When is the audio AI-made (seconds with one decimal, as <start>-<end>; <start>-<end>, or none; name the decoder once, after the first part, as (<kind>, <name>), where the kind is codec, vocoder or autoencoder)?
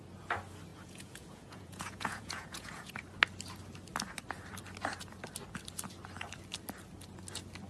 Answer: 0.7-2.9 (vocoder, Vocos)